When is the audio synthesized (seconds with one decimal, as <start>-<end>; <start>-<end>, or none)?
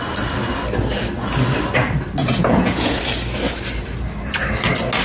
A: 2.2-3.0